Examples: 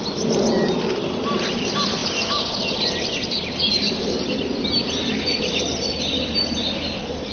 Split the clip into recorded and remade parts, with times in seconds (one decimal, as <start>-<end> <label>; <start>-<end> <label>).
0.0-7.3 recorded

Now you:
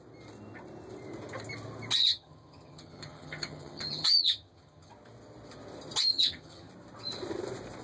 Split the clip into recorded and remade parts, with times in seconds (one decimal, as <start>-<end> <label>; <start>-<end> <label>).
0.0-2.0 recorded; 2.0-4.9 remade; 4.9-6.1 recorded; 6.1-6.7 remade; 6.7-7.8 recorded

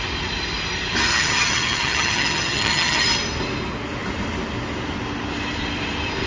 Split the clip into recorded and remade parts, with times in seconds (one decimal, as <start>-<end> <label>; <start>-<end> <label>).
0.0-1.1 recorded; 1.1-3.0 remade; 3.0-6.3 recorded

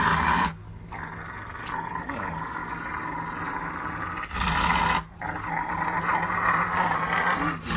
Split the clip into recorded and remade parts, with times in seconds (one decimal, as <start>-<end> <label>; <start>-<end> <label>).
0.0-7.8 recorded

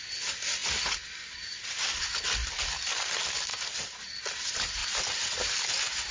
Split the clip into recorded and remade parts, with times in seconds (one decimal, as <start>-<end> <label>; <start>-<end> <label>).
0.0-6.1 recorded